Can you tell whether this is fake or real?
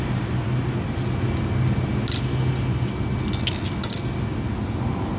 real